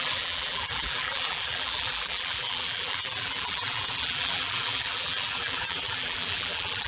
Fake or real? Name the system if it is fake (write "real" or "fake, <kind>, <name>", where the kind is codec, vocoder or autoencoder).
fake, vocoder, BigVGAN v2